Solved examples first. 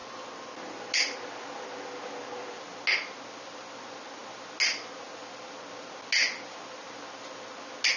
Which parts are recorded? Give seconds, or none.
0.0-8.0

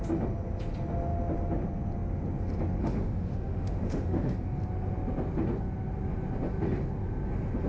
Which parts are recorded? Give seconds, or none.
0.0-2.8; 4.3-7.7